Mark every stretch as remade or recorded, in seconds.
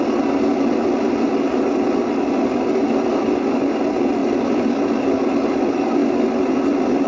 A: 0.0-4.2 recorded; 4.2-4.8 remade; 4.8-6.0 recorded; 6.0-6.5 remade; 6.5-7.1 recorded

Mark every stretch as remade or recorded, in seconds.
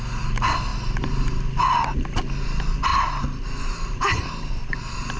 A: 0.0-5.2 recorded